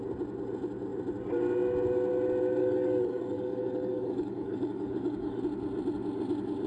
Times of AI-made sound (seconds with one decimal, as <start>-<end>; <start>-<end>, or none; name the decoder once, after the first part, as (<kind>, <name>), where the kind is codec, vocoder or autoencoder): 2.6-5.4 (codec, DAC)